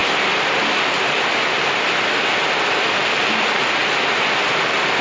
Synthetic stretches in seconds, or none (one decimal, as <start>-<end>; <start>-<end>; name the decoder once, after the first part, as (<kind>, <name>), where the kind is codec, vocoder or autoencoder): none